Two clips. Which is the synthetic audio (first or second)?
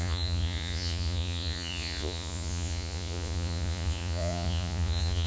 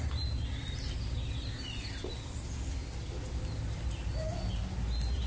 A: first